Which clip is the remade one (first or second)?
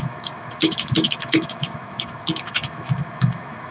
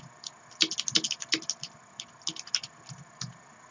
first